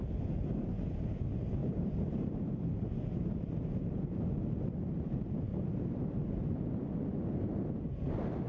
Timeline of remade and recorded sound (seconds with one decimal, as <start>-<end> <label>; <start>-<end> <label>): 0.0-1.6 recorded; 1.6-3.8 remade; 3.8-5.5 recorded; 5.5-6.9 remade; 6.9-8.5 recorded